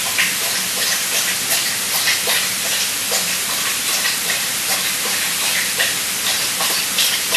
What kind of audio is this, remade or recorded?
remade